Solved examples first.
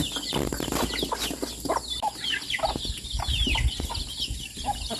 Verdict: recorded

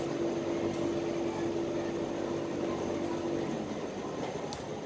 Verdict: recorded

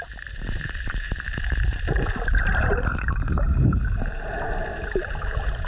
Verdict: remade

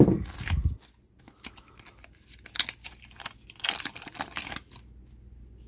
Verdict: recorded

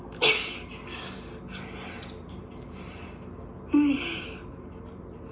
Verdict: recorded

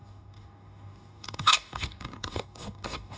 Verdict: remade